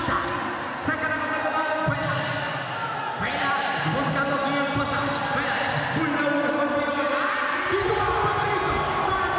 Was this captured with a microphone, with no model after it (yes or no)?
yes